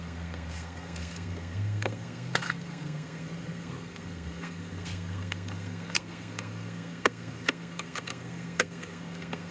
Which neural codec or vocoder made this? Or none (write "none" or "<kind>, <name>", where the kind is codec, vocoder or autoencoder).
codec, SNAC